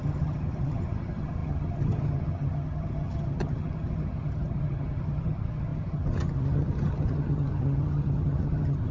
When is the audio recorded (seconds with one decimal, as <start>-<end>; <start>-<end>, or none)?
none